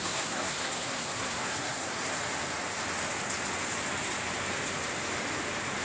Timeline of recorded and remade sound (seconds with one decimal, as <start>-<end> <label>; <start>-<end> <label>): 0.0-2.1 remade; 2.1-5.8 recorded